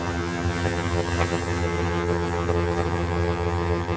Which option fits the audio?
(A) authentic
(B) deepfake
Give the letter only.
B